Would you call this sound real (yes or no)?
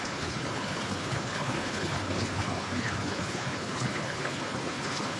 no